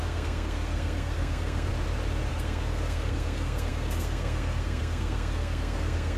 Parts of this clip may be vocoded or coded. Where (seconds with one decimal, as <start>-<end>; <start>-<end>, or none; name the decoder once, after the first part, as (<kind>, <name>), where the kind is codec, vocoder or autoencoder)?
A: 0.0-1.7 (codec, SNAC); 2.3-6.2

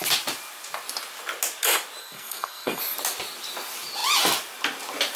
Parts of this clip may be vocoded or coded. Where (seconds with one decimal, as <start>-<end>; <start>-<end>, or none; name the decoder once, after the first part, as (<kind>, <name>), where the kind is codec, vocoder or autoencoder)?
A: 2.0-2.8 (codec, SNAC)

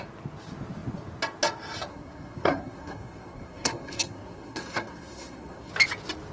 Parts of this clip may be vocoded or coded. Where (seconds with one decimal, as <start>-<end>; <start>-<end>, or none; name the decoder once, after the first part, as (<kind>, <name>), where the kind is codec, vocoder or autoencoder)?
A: 1.9-5.7 (codec, SNAC)